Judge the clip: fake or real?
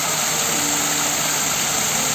real